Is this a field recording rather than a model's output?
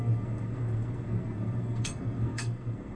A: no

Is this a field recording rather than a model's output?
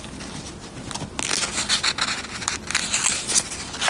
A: yes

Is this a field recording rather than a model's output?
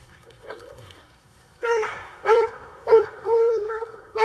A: no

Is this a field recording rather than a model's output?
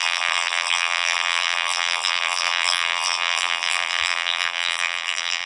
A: no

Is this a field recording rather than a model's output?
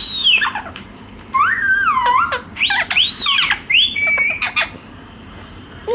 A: no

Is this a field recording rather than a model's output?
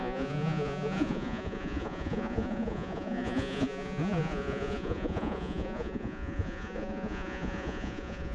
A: no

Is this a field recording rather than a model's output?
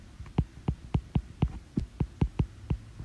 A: yes